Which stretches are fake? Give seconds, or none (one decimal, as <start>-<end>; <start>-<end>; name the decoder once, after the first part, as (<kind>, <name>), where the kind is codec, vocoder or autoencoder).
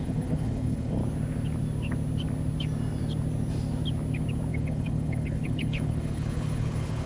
0.0-1.0 (codec, HILCodec); 4.5-7.1